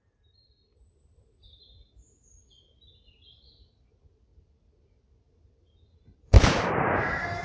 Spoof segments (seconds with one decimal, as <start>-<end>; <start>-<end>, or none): none